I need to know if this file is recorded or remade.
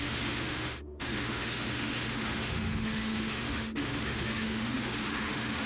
remade